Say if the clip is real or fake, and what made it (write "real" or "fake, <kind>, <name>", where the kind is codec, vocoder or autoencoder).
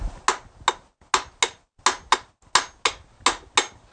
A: real